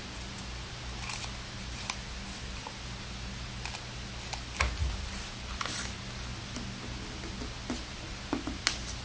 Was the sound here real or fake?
real